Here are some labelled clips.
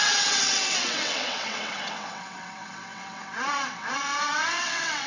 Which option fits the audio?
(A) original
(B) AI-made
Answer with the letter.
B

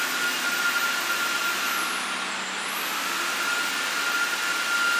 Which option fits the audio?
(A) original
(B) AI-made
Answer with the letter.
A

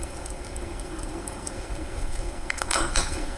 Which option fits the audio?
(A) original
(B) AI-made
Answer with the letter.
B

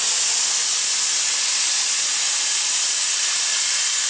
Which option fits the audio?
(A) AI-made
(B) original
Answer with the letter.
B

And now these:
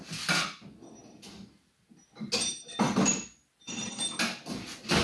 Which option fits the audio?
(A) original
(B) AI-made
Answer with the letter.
A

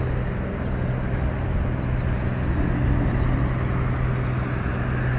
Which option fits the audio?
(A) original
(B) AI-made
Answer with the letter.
A